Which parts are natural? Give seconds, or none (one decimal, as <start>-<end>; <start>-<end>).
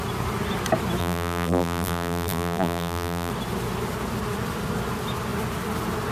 0.0-1.0; 3.3-6.1